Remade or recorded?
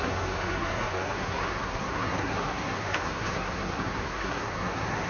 remade